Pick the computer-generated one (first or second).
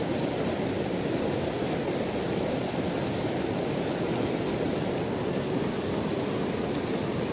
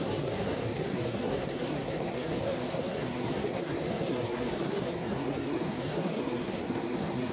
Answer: second